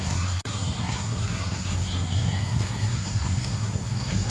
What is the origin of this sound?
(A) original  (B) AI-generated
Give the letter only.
B